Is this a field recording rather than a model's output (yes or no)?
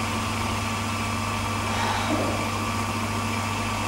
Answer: yes